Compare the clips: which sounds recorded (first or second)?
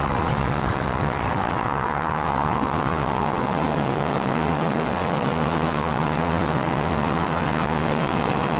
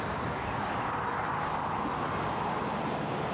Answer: second